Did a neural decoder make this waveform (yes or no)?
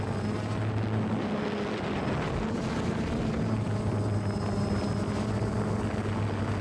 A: no